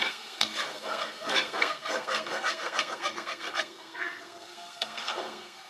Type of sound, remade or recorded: remade